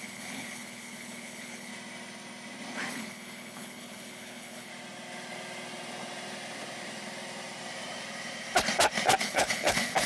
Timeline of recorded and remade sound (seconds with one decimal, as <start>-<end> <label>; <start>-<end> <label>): 0.0-1.7 remade; 1.7-2.9 recorded; 2.9-4.7 remade; 4.7-9.2 recorded; 9.2-10.1 remade